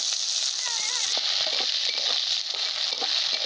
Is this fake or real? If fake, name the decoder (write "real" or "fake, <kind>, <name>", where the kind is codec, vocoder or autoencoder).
real